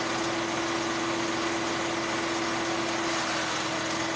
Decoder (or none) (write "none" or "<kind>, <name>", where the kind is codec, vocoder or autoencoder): none